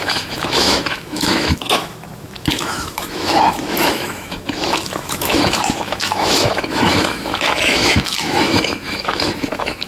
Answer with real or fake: fake